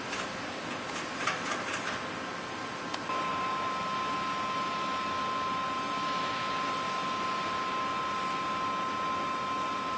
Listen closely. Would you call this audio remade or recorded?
recorded